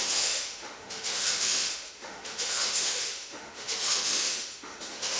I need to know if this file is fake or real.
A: fake